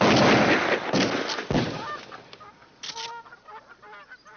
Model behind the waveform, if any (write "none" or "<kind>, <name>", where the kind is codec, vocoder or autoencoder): none